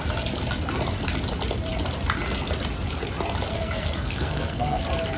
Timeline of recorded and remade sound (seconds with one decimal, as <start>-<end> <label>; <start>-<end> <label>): 0.0-3.5 recorded; 3.5-4.8 remade; 4.8-5.2 recorded